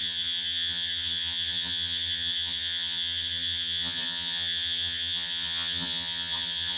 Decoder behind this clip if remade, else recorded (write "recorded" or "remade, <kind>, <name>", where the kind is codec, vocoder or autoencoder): remade, vocoder, HiFi-GAN